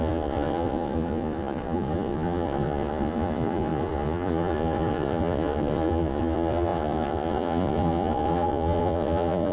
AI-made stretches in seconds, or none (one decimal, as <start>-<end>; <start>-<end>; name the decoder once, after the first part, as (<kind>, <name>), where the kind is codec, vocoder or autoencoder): 0.0-9.5 (vocoder, Vocos)